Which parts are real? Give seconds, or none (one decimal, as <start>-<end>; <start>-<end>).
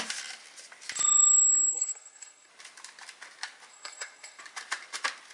0.0-1.7; 2.5-3.7; 4.4-5.3